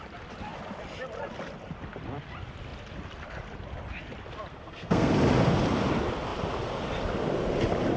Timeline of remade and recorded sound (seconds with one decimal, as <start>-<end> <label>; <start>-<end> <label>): 0.0-4.5 recorded; 4.5-5.1 remade; 5.1-8.0 recorded